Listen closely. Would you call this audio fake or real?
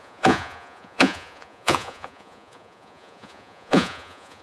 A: fake